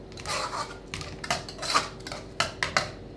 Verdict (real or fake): real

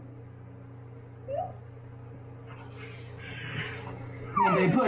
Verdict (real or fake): real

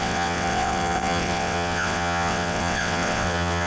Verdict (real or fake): fake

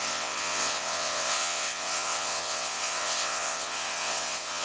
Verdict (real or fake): fake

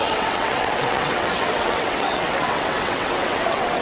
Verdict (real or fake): fake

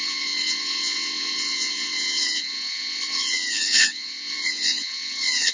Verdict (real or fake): fake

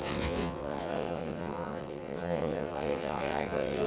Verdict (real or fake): fake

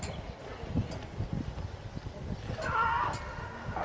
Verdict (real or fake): real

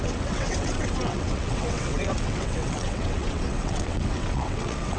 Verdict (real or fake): fake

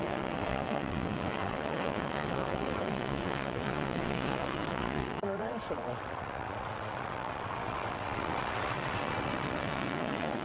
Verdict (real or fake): fake